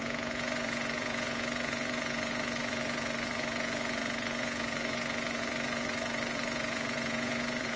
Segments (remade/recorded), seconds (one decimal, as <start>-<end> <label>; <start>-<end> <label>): 0.0-7.8 remade